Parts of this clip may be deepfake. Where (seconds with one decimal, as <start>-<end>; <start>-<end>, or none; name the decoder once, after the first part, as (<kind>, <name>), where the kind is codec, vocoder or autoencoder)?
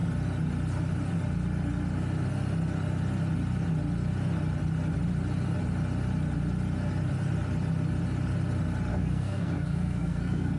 8.9-10.6 (codec, SNAC)